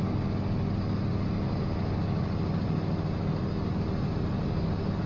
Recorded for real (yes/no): yes